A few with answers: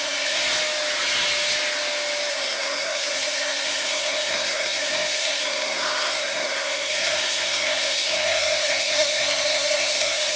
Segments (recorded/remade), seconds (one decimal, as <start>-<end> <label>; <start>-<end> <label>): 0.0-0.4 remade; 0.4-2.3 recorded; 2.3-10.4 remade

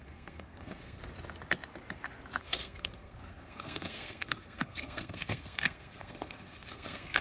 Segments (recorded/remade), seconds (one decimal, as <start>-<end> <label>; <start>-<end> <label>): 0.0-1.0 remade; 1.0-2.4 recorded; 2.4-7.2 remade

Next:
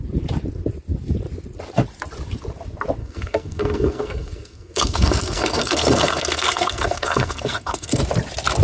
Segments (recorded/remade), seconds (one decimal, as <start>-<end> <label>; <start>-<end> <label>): 0.0-3.0 recorded; 3.0-8.0 remade; 8.0-8.6 recorded